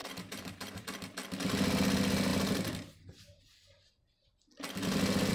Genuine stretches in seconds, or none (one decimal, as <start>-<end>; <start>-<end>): 0.8-5.3